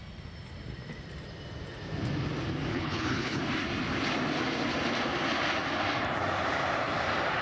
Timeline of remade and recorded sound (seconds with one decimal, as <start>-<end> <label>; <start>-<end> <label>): 0.0-2.7 recorded; 2.7-3.4 remade; 3.4-7.4 recorded